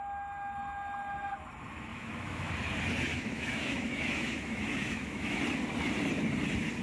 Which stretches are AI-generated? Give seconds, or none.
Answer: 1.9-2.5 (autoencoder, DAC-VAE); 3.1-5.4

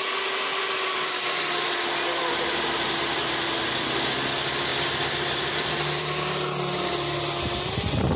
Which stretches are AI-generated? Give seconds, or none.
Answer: 4.7-6.3 (vocoder, BigVGAN v2)

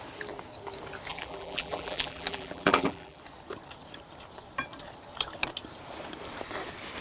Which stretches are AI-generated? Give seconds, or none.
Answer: 1.1-3.2 (vocoder, BigVGAN v2)

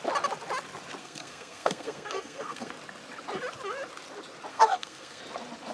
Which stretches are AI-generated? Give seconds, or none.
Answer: 1.0-2.7 (codec, SNAC); 4.5-5.2

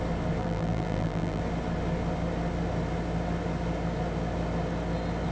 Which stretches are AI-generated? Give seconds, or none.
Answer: 0.4-1.4 (vocoder, BigVGAN v2)

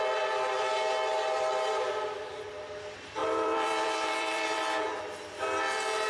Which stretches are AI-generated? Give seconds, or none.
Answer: 3.2-5.0 (vocoder, BigVGAN v2)